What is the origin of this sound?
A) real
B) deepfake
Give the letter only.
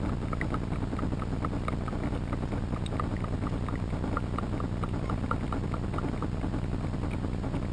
A